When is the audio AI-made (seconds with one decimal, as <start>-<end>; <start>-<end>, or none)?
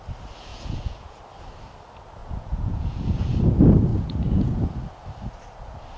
0.5-1.2; 2.2-3.3; 3.9-4.6